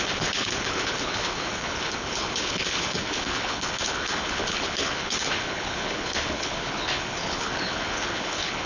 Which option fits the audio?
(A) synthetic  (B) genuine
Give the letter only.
A